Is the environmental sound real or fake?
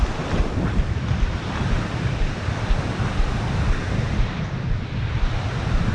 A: real